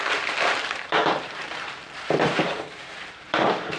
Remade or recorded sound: remade